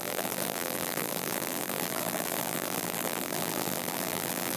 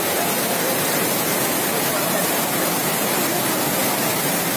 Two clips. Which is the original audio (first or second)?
second